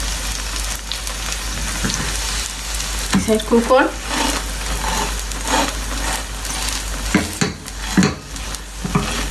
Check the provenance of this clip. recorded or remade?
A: recorded